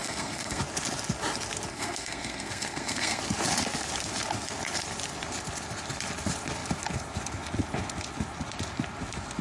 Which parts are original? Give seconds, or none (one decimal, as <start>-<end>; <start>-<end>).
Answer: 0.6-1.7; 3.2-9.4